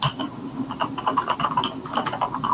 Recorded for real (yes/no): yes